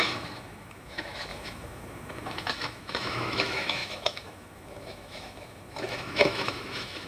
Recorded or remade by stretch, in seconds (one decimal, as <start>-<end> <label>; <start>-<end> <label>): 0.0-7.1 remade